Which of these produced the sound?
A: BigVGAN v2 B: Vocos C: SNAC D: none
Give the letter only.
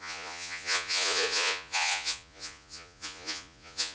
B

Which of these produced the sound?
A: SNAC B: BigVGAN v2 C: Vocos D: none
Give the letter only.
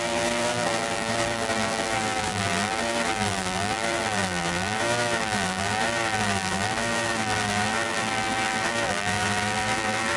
B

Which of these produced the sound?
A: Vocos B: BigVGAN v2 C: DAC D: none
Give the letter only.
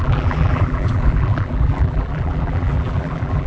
B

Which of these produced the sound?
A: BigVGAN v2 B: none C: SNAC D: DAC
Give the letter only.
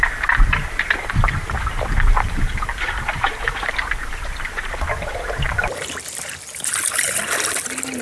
A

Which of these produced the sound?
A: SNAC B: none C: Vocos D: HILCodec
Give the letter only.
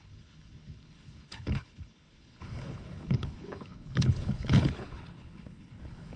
D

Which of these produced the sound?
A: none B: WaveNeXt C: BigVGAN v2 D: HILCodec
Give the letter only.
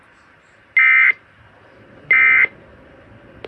A